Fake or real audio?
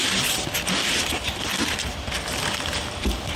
fake